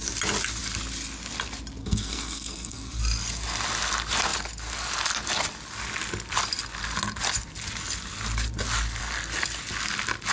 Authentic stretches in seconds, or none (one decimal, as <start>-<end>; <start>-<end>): 0.0-1.8; 3.0-10.3